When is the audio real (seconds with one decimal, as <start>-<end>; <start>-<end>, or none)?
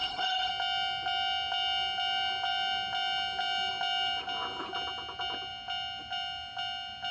0.5-7.1